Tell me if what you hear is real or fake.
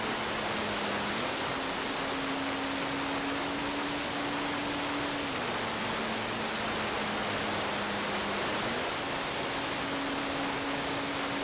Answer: real